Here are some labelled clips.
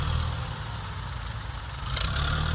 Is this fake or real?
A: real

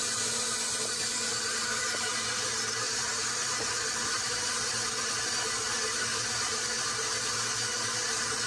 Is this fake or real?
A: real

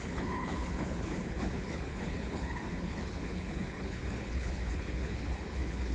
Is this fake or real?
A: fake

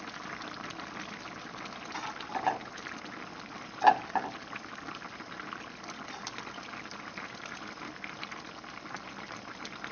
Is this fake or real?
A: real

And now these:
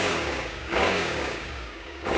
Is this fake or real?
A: fake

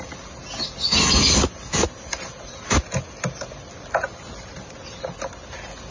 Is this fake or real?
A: real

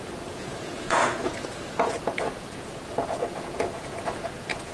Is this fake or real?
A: fake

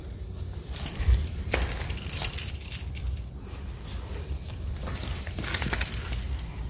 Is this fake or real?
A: real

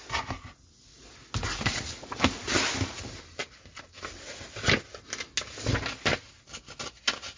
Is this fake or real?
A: real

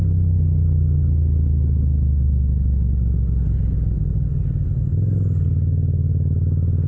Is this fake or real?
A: real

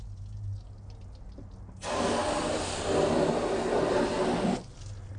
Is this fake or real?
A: real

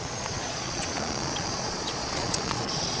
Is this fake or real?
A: fake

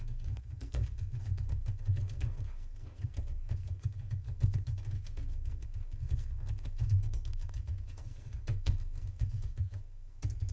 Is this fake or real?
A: fake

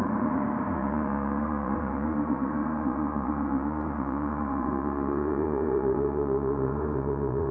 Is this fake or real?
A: fake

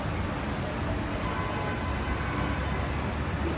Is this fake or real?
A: real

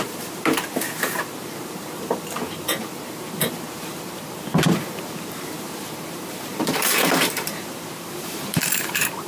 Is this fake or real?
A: fake